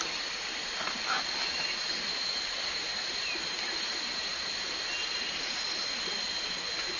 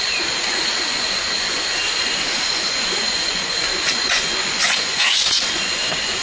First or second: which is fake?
second